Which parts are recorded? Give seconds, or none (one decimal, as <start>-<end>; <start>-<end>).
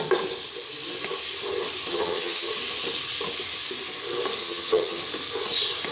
0.0-1.9; 2.5-4.4; 5.0-5.9